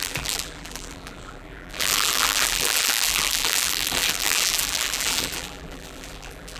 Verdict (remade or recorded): remade